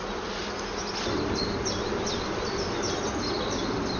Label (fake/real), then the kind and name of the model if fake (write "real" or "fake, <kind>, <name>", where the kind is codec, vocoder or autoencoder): real